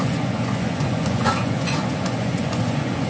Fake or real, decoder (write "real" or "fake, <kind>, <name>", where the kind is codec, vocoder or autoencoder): fake, vocoder, Vocos